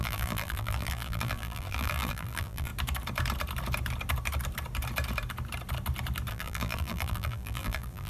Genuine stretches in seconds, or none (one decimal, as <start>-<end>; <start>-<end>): 2.7-6.3